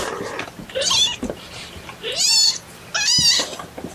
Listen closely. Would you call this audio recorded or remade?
recorded